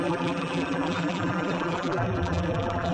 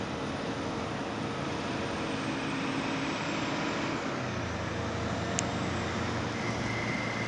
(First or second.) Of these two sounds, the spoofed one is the first